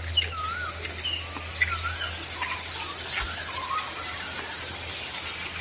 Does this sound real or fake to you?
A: real